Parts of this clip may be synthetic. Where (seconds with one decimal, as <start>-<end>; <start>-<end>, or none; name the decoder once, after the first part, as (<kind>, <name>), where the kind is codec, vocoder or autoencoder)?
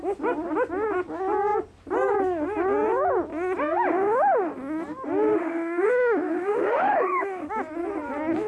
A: 3.9-4.5 (autoencoder, DAC-VAE); 5.3-7.5